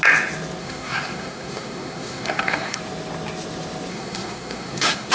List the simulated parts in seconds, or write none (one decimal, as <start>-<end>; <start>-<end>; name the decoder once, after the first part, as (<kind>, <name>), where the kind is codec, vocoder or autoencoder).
0.6-2.8 (codec, SNAC); 3.9-5.1